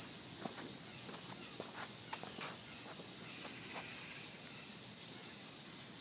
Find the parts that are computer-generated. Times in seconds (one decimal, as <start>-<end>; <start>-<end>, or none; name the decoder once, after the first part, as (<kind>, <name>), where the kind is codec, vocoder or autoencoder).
0.0-3.5 (vocoder, Vocos)